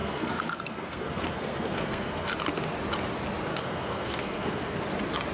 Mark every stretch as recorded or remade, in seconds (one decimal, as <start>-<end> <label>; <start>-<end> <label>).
0.0-2.3 remade; 2.3-3.5 recorded; 3.5-4.8 remade; 4.8-5.3 recorded

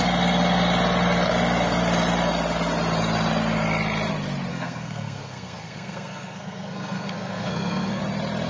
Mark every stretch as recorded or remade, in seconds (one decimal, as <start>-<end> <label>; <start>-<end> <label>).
0.0-4.5 recorded; 4.5-8.0 remade; 8.0-8.5 recorded